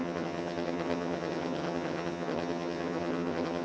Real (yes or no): no